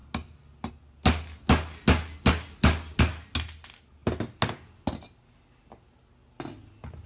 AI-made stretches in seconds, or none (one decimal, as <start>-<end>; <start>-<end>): none